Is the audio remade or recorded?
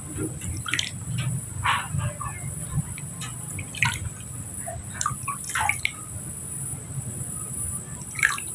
recorded